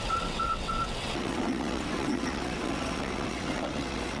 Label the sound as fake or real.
fake